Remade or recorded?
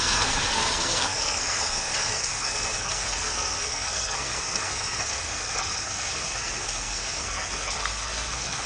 remade